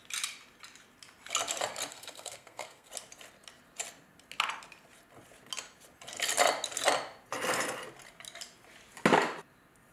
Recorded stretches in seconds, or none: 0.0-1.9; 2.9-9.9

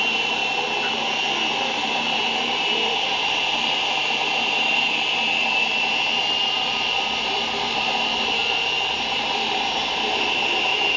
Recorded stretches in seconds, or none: 0.4-1.6; 8.4-8.9